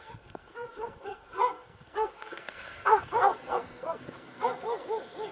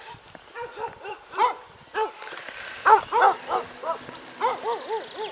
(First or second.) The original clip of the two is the second